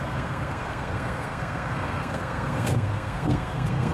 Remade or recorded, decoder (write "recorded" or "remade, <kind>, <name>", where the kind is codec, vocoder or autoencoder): remade, codec, SNAC